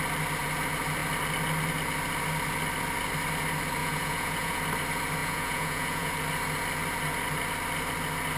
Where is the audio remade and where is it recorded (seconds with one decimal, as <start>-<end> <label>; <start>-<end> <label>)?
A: 0.0-3.8 recorded; 3.8-4.6 remade; 4.6-5.2 recorded; 5.2-6.1 remade; 6.1-8.4 recorded